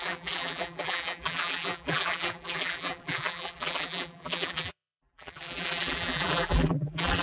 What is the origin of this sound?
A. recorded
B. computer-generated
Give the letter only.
B